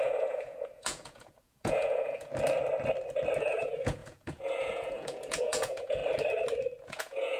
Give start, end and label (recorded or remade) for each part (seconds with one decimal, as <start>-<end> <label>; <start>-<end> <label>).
0.0-2.3 remade; 2.3-3.4 recorded; 3.4-6.0 remade; 6.0-6.9 recorded; 6.9-7.4 remade

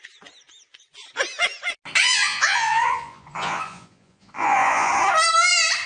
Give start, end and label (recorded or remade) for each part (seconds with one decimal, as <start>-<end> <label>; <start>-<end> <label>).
0.0-2.0 recorded; 2.0-4.9 remade; 4.9-5.9 recorded

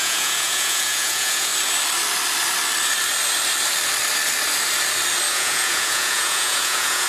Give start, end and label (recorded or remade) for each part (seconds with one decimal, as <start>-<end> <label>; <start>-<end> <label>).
0.0-1.5 remade; 1.5-5.3 recorded; 5.3-7.1 remade

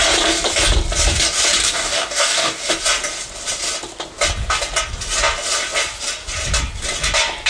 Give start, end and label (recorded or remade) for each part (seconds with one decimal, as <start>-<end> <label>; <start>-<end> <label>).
0.0-1.6 recorded; 1.6-2.6 remade; 2.6-7.5 recorded

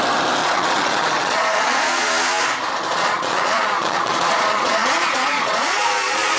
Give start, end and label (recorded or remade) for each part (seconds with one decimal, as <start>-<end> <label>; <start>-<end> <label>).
0.0-0.4 recorded; 0.4-2.1 remade; 2.1-2.9 recorded; 2.9-6.4 remade